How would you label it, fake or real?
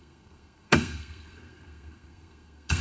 fake